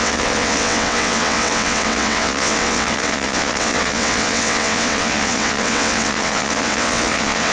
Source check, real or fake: fake